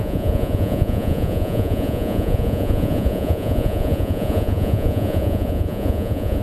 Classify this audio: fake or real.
fake